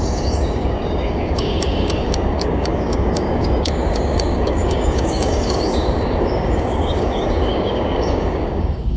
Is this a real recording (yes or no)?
no